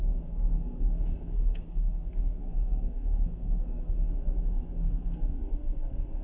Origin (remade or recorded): remade